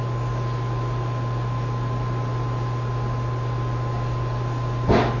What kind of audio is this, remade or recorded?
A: recorded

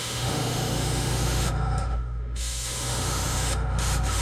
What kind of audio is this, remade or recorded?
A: remade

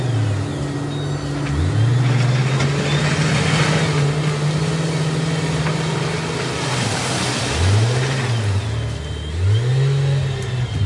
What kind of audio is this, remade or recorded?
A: recorded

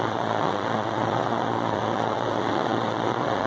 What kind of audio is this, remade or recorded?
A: remade